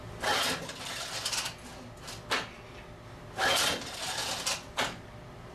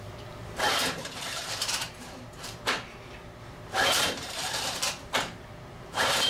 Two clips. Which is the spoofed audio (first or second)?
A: second